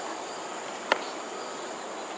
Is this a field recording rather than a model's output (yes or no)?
yes